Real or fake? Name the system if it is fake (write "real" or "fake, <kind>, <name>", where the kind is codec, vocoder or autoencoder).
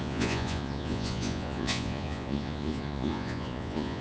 fake, vocoder, Vocos